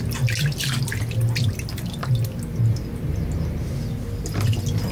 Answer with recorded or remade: recorded